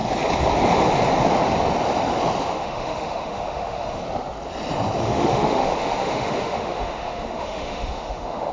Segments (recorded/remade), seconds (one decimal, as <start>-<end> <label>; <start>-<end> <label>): 0.0-2.5 recorded; 2.5-4.0 remade; 4.0-5.0 recorded; 5.0-8.5 remade